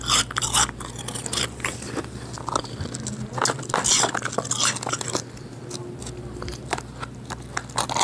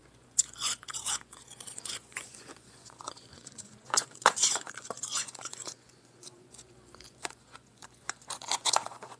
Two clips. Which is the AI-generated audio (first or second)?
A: second